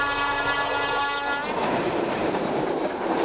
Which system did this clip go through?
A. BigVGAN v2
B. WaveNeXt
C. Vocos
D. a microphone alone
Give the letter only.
D